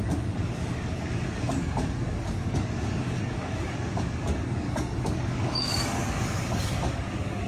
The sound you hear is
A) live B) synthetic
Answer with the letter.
B